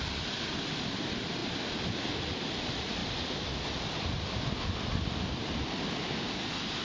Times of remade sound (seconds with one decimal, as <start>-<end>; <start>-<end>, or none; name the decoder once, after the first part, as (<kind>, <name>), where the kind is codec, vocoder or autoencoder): 0.0-3.0 (vocoder, BigVGAN v2); 3.7-6.8